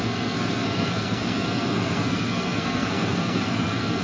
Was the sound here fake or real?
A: fake